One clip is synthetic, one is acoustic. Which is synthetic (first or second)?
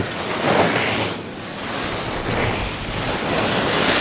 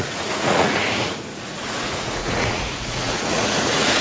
second